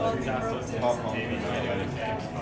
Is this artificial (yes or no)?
no